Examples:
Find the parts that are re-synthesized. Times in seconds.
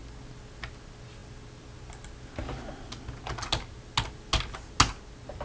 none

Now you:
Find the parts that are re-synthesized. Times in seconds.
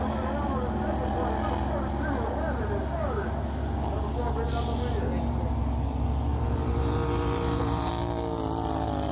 6.3-7.9 (vocoder, BigVGAN v2)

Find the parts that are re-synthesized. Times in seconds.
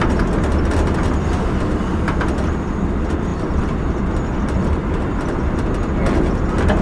none